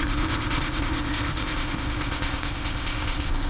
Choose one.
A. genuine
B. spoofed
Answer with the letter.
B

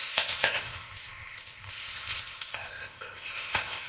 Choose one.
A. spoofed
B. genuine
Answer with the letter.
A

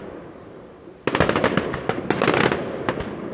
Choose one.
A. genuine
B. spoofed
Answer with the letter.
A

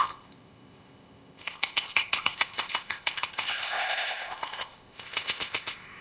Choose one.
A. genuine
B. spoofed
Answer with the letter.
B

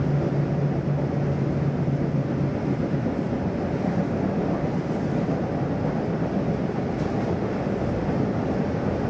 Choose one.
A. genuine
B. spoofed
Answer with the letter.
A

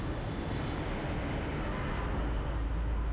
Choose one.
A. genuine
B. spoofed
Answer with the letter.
A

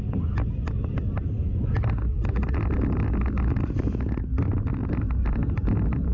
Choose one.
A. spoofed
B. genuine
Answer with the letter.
B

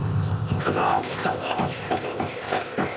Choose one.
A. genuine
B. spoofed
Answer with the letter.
B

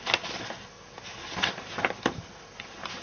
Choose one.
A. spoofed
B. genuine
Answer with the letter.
B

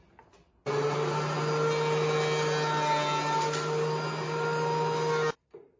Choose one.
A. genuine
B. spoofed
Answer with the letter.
A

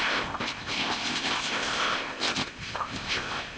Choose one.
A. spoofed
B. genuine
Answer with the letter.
A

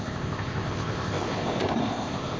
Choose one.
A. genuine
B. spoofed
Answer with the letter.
B